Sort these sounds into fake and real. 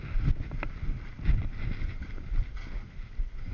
real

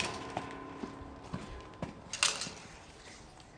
real